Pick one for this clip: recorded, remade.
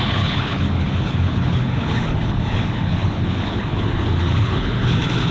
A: remade